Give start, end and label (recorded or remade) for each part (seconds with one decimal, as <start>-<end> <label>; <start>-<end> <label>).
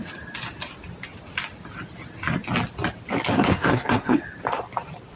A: 0.0-3.3 recorded; 3.3-4.2 remade; 4.2-5.2 recorded